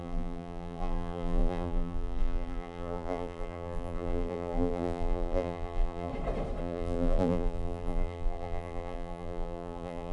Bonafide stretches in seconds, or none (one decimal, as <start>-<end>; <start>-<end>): 6.1-6.6